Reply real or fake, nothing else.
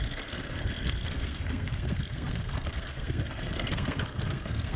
fake